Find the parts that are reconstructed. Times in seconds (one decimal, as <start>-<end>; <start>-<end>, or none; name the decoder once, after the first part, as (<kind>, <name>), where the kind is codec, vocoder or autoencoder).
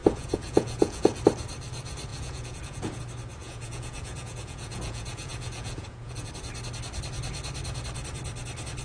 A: 0.0-1.2 (vocoder, Vocos); 2.1-3.0; 3.4-6.3